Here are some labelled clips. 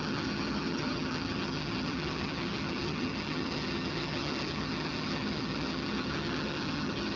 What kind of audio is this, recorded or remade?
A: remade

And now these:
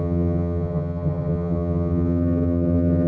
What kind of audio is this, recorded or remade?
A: remade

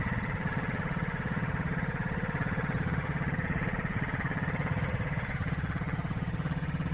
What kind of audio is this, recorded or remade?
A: remade